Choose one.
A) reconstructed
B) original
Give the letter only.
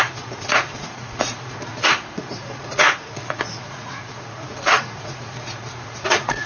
A